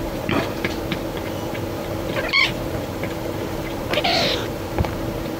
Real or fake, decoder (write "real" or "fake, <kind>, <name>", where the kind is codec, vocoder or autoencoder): fake, vocoder, BigVGAN v2